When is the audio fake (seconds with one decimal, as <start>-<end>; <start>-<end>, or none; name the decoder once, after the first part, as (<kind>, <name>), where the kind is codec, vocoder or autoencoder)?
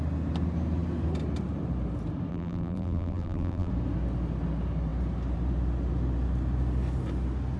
2.3-3.7 (vocoder, BigVGAN v2)